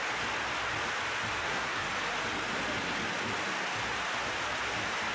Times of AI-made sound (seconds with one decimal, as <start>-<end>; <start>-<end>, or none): 1.4-1.9